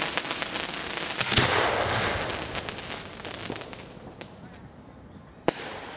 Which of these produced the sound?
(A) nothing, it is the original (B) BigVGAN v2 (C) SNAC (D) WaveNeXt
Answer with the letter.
A